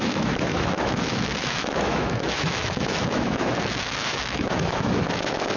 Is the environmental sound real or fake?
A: fake